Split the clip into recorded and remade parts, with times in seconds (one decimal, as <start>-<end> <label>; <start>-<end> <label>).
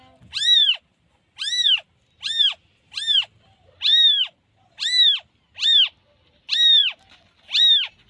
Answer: 0.0-8.1 recorded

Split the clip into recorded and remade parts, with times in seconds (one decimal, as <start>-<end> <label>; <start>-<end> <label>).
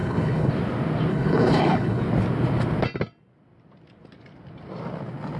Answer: 0.0-0.5 remade; 0.5-1.1 recorded; 1.1-2.0 remade; 2.0-5.4 recorded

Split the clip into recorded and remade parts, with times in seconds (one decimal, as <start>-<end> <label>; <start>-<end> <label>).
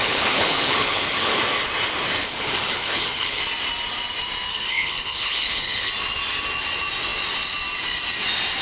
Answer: 0.0-1.4 remade; 1.4-2.2 recorded; 2.2-3.4 remade; 3.4-4.5 recorded; 4.5-5.9 remade; 5.9-8.6 recorded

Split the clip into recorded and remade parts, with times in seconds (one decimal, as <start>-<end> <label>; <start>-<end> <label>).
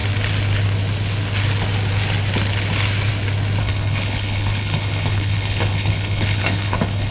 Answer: 0.0-3.6 recorded; 3.6-7.1 remade